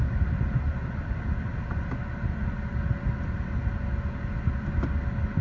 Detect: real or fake real